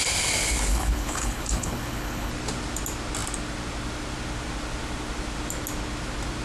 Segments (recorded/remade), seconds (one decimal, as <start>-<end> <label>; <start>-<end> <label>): 0.0-0.7 recorded; 0.7-2.3 remade; 2.3-6.4 recorded